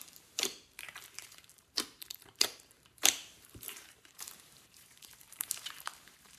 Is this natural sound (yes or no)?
no